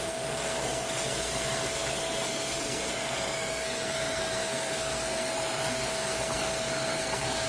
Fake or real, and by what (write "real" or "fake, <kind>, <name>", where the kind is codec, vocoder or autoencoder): fake, codec, SNAC